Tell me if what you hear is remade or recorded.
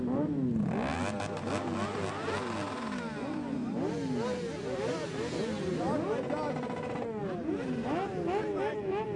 recorded